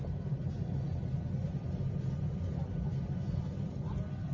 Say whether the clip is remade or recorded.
recorded